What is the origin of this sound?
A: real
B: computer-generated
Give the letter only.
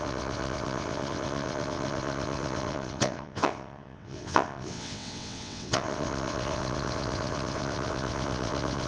B